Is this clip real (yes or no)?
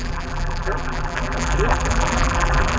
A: no